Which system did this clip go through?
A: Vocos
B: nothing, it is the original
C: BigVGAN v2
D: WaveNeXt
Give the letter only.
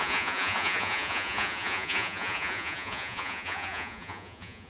A